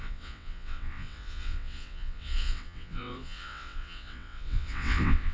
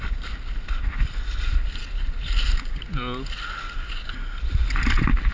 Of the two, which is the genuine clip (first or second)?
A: second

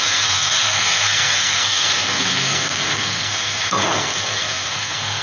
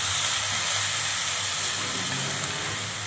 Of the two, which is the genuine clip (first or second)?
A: second